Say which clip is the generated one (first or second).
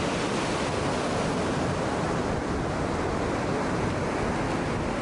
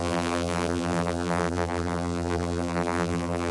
second